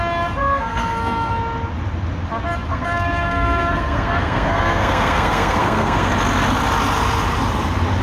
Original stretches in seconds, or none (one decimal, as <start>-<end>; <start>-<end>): 0.0-0.4; 1.3-2.7; 6.1-8.0